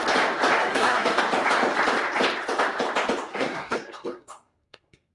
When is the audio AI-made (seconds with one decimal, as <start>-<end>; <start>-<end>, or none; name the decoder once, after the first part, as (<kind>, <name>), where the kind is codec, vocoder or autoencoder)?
0.6-1.2 (codec, SNAC); 3.3-5.1